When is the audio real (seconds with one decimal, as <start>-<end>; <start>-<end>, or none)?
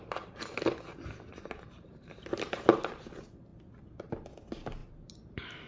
0.0-1.3; 2.9-4.8